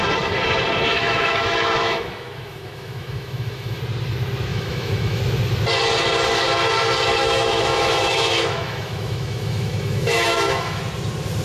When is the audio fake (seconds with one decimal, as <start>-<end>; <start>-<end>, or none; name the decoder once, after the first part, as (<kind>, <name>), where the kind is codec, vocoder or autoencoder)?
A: 0.9-3.8 (autoencoder, DAC-VAE); 4.5-5.2; 7.2-10.8